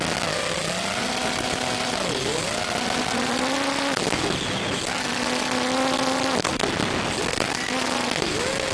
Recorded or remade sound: recorded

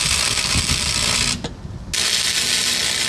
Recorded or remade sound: recorded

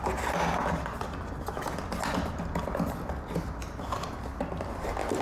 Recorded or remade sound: recorded